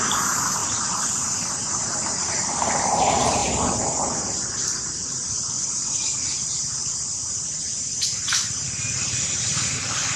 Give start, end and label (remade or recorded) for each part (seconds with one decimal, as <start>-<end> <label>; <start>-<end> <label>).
0.0-3.4 remade; 3.4-6.2 recorded; 6.2-10.2 remade